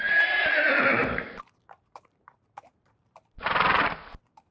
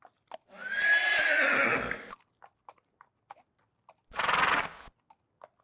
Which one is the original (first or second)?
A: second